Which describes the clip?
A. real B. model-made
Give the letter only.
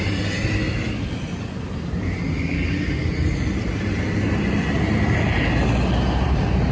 A